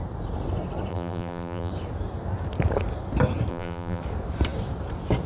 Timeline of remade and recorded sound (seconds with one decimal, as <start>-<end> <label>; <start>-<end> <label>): 0.0-0.9 recorded; 0.9-1.7 remade; 1.7-3.5 recorded; 3.5-4.0 remade; 4.0-5.3 recorded